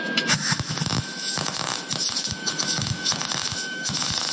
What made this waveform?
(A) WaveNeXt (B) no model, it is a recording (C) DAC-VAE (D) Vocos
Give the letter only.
C